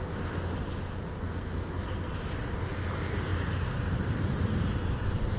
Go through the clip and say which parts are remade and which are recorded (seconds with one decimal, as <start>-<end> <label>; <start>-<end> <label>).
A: 0.0-1.2 recorded; 1.2-2.1 remade; 2.1-5.4 recorded